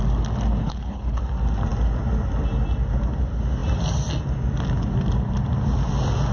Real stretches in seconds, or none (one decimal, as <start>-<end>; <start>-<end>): 0.0-0.6; 1.2-6.3